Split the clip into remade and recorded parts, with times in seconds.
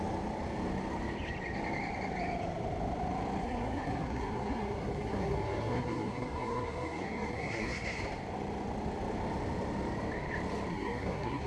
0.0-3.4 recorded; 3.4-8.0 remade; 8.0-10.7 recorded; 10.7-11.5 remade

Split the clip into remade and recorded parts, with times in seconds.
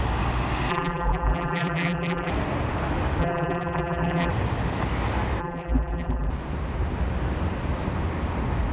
0.0-0.7 recorded; 0.7-2.3 remade; 2.3-3.2 recorded; 3.2-4.3 remade; 4.3-5.4 recorded; 5.4-6.3 remade; 6.3-8.7 recorded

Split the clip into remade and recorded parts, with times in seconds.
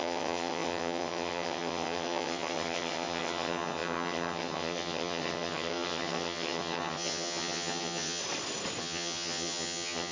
0.0-8.2 remade; 8.2-8.8 recorded; 8.8-10.1 remade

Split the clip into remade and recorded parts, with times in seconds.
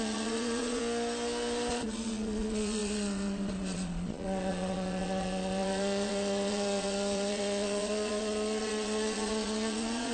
0.0-0.8 remade; 0.8-1.7 recorded; 1.7-10.1 remade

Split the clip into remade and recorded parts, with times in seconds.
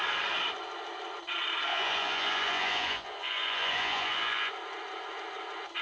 0.0-1.7 recorded; 1.7-4.5 remade; 4.5-5.8 recorded